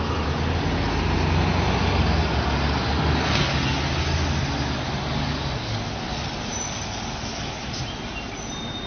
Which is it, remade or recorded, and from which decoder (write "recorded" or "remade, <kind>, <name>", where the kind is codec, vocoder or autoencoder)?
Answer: recorded